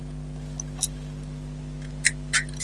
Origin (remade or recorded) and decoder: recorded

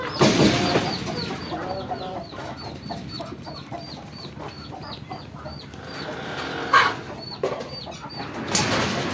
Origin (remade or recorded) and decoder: recorded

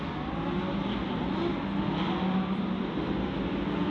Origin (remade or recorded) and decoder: recorded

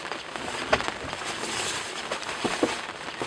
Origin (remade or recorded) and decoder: recorded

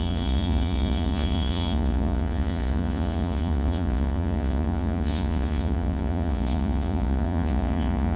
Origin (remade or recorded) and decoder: remade, vocoder, Vocos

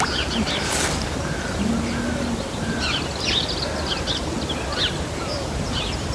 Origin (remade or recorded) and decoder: recorded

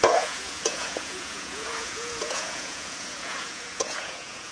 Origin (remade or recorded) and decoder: remade, vocoder, Vocos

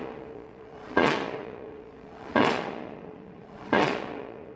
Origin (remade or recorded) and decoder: remade, vocoder, Vocos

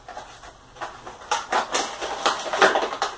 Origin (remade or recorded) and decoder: recorded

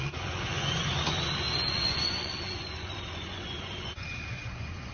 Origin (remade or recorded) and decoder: remade, vocoder, Vocos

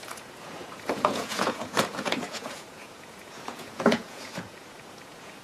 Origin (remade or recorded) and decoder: remade, vocoder, Vocos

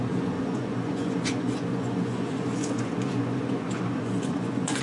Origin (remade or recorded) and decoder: remade, vocoder, Vocos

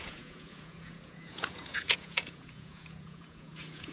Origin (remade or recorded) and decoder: remade, vocoder, Vocos